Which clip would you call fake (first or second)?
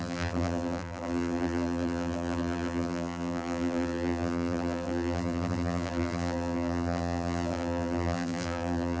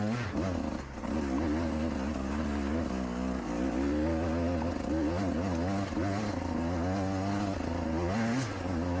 first